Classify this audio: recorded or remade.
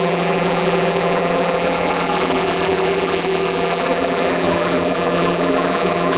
remade